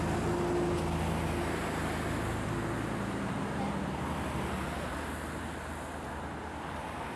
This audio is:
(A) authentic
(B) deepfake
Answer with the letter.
A